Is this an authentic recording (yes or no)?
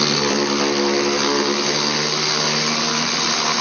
yes